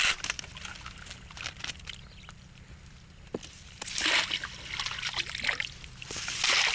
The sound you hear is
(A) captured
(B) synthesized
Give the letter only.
A